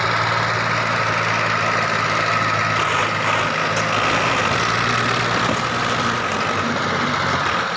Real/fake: real